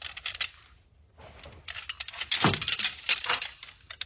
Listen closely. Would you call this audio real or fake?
real